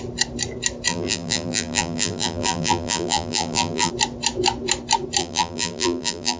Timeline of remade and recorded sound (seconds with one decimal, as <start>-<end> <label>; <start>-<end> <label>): 0.0-0.9 recorded; 0.9-3.9 remade; 3.9-5.2 recorded; 5.2-6.4 remade